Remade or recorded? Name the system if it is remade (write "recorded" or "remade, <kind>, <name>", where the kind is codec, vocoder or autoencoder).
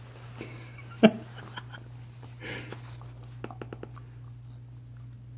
recorded